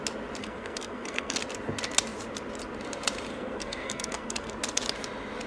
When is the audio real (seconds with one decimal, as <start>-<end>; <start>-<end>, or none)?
0.0-0.4; 1.4-3.3; 4.5-5.5